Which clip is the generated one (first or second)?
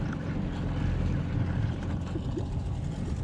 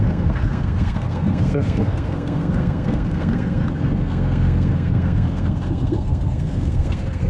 second